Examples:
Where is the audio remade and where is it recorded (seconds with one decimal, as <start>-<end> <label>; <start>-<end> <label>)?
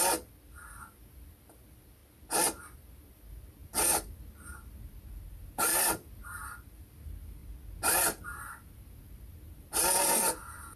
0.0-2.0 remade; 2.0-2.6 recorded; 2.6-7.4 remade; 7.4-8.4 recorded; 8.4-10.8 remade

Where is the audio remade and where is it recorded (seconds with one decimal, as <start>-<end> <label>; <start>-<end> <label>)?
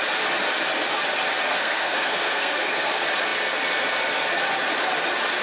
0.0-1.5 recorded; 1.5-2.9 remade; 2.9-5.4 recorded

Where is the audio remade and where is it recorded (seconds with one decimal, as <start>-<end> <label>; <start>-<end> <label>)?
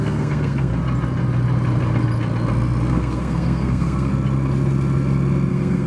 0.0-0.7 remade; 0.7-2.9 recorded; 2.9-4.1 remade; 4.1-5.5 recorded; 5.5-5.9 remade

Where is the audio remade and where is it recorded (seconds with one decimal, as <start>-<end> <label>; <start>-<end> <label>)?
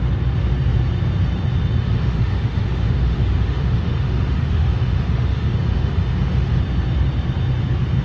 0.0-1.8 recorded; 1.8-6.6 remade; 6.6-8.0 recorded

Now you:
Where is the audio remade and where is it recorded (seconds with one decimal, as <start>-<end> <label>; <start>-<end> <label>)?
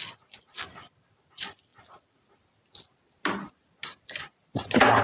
0.0-5.0 recorded